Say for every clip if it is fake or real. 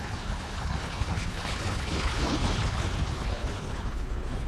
fake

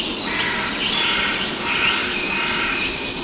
real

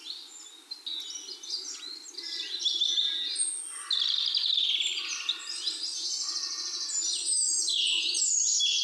real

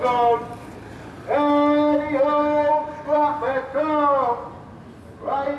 real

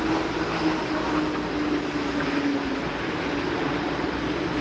real